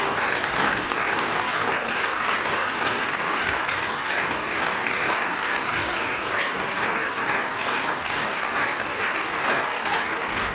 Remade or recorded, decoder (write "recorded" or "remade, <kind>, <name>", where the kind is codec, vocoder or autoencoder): remade, codec, DAC